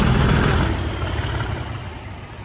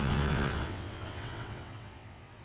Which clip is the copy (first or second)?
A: second